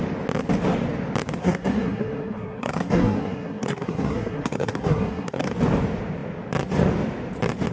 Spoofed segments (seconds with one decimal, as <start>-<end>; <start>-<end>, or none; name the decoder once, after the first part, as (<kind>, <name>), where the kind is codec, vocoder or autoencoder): 1.4-5.5 (codec, SNAC)